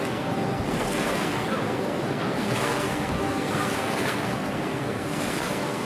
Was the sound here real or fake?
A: fake